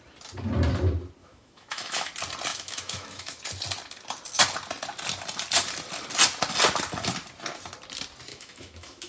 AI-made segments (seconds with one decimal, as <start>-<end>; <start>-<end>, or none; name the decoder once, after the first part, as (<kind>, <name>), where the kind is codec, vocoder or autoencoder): 1.2-2.1 (autoencoder, DAC-VAE); 2.5-3.4; 8.3-9.1